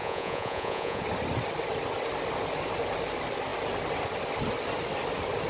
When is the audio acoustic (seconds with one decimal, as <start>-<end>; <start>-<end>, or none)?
1.0-5.5